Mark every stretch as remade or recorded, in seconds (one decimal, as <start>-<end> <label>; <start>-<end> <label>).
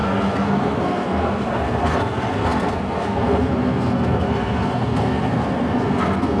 0.0-6.4 remade